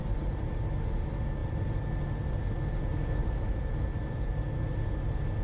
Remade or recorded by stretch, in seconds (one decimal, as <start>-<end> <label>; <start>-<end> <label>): 0.0-5.4 recorded